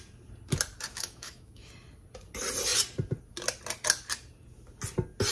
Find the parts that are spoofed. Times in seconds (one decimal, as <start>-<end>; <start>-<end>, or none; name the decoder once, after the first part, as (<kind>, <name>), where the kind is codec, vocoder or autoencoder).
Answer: 0.9-1.7 (autoencoder, DAC-VAE)